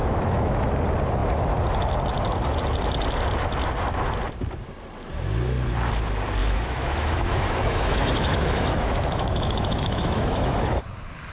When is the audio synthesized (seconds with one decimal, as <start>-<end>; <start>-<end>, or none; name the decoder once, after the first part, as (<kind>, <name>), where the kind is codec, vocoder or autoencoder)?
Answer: 0.0-0.7 (autoencoder, DAC-VAE); 6.4-10.8